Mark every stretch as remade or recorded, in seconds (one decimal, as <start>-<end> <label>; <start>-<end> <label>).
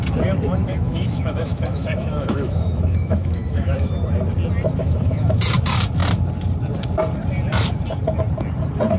0.0-0.5 recorded; 0.5-3.9 remade; 3.9-4.8 recorded; 4.8-5.4 remade; 5.4-9.0 recorded